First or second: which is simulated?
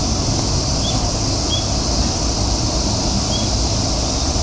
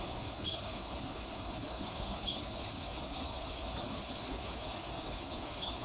second